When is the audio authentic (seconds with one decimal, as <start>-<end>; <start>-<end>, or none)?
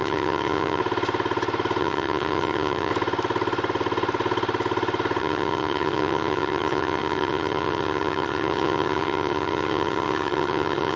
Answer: 0.8-1.8; 2.9-5.2